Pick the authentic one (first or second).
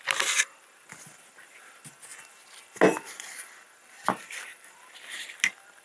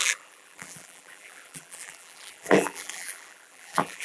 first